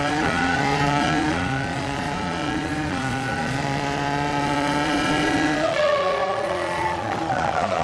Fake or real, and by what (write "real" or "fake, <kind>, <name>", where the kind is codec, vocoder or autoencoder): fake, vocoder, Vocos